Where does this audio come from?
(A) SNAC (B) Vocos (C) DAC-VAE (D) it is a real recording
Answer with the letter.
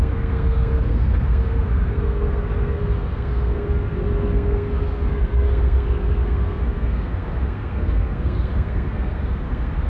A